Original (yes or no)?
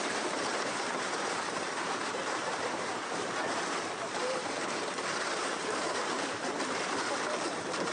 no